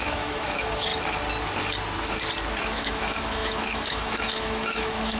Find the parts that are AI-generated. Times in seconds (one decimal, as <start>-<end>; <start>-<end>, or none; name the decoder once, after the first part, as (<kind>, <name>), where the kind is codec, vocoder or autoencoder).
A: 0.0-0.9 (autoencoder, DAC-VAE); 2.6-5.2